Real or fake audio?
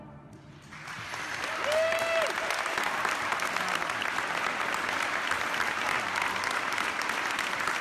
real